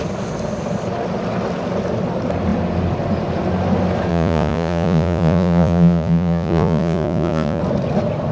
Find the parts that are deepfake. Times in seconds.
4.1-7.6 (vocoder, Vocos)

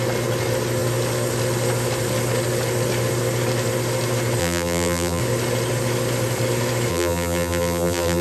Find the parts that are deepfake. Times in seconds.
4.4-5.2 (vocoder, BigVGAN v2); 6.9-8.2

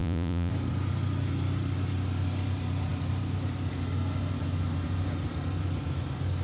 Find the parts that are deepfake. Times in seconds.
0.0-0.5 (vocoder, Vocos)

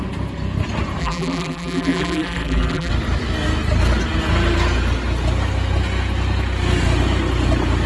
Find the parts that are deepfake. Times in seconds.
1.0-2.9 (vocoder, BigVGAN v2)

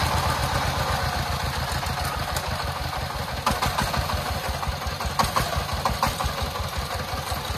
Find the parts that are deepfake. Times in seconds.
none

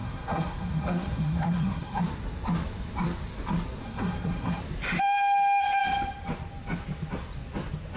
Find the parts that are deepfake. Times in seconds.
0.0-2.0 (codec, SNAC); 3.8-4.6

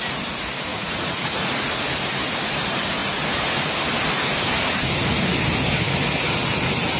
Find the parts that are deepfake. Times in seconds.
0.7-1.7 (vocoder, Vocos)